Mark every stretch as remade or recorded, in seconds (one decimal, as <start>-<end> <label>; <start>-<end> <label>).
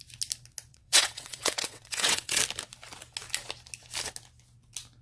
0.0-0.7 recorded; 0.7-2.4 remade; 2.4-5.0 recorded